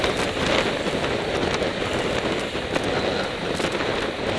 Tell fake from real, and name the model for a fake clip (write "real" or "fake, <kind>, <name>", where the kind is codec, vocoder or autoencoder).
real